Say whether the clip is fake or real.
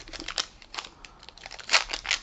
fake